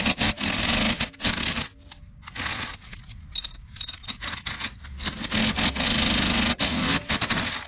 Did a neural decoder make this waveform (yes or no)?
no